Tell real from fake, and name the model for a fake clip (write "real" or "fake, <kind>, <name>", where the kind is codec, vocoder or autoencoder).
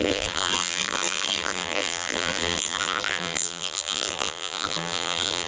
fake, vocoder, BigVGAN v2